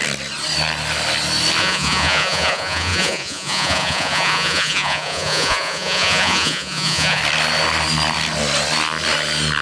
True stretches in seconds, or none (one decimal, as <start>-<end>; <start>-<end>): 0.0-1.6; 7.2-9.6